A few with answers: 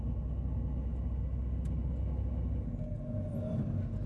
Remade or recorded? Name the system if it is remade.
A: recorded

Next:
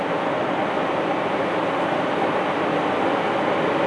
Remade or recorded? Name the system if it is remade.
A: recorded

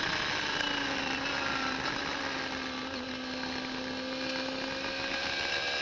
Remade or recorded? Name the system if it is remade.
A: recorded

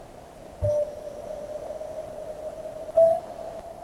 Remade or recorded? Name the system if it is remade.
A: recorded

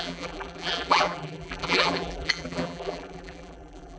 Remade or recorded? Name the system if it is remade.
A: remade, vocoder, BigVGAN v2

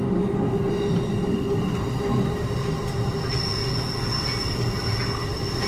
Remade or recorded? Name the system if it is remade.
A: recorded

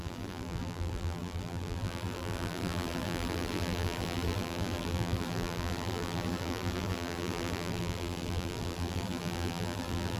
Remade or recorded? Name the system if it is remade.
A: remade, vocoder, BigVGAN v2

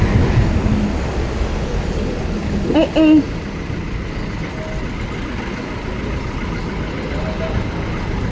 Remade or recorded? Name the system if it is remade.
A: recorded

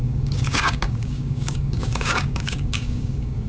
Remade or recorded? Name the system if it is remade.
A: remade, codec, DAC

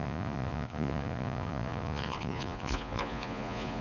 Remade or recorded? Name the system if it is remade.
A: remade, vocoder, Vocos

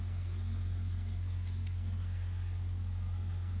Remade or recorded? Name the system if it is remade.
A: remade, codec, SNAC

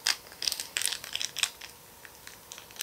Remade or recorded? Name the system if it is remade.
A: recorded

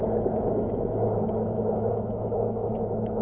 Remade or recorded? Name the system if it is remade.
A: remade, autoencoder, DAC-VAE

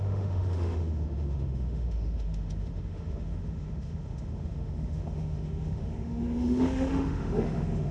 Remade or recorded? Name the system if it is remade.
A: remade, autoencoder, DAC-VAE